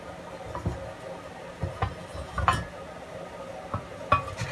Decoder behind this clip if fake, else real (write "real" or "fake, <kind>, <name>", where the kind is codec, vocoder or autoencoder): real